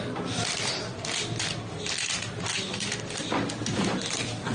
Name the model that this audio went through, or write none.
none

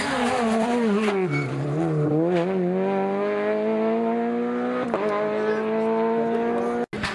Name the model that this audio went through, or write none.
none